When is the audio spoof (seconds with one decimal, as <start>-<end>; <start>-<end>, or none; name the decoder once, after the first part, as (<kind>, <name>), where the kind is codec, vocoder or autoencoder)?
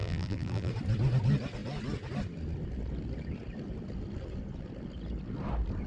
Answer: 0.0-0.7 (vocoder, BigVGAN v2)